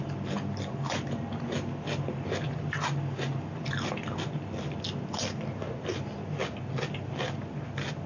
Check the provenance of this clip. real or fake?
real